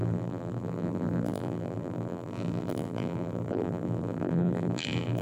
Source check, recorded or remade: remade